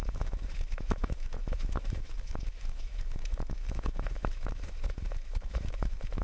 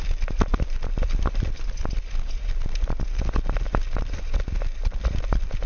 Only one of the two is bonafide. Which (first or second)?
second